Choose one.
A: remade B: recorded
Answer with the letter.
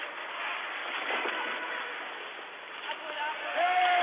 B